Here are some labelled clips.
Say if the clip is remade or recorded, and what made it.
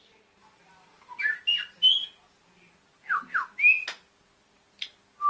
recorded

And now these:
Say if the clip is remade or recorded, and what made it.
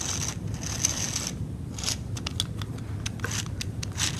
recorded